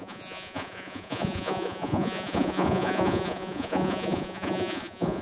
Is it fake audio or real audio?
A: fake